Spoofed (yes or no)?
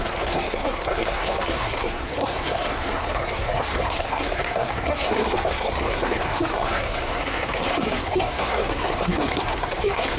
yes